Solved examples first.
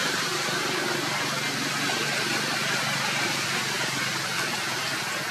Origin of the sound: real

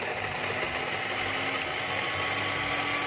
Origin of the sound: real